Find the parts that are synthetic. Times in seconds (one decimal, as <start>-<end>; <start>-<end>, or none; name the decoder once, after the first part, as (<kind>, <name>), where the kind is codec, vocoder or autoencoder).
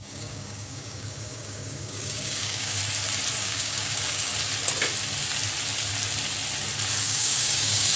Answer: 0.0-2.8 (codec, DAC); 3.4-4.3; 7.0-8.0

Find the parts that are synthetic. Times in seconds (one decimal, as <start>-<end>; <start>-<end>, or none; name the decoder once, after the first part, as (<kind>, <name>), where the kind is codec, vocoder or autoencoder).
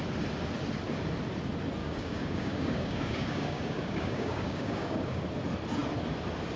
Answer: 1.8-5.2 (codec, DAC)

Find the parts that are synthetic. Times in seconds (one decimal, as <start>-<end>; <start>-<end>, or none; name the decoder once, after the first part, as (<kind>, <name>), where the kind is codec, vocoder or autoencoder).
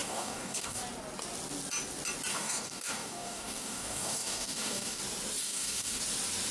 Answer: 0.0-0.8 (codec, DAC); 2.3-5.0; 5.4-6.0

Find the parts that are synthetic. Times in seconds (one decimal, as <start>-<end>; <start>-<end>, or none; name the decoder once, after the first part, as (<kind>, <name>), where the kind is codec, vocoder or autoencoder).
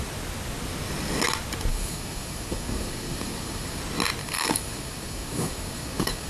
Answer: 1.7-3.8 (codec, DAC); 4.2-6.3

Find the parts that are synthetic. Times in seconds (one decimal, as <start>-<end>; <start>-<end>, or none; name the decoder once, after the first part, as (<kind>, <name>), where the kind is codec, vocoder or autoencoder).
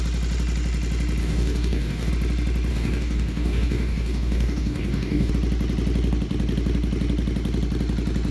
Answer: 1.2-2.1 (codec, DAC); 2.7-5.3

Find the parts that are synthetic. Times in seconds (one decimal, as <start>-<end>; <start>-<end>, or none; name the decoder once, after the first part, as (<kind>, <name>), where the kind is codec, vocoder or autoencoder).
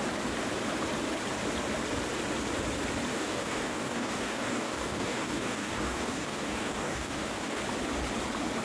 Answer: 3.1-7.6 (codec, DAC)